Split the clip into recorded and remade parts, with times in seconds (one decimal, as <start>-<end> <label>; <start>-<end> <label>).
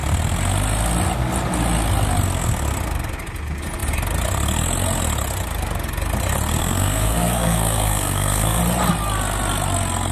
0.0-6.6 recorded; 6.6-8.6 remade; 8.6-10.1 recorded